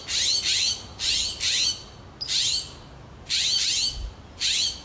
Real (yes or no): yes